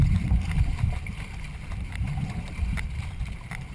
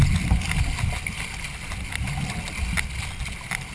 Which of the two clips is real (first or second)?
second